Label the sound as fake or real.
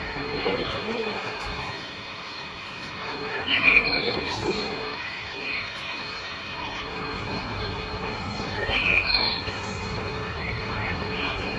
fake